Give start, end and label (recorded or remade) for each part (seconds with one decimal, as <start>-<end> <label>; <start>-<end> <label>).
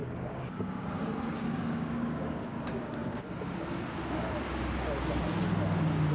0.0-3.3 remade; 3.3-6.1 recorded